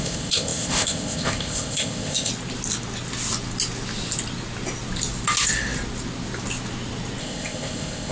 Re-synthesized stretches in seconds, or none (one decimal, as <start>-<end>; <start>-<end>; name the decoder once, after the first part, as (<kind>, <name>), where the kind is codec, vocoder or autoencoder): 0.0-2.3 (codec, ZipCodec); 7.2-8.1